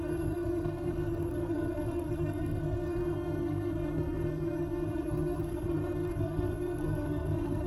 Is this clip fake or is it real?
fake